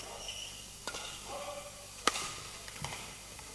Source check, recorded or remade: remade